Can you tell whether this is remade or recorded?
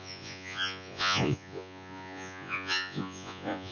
remade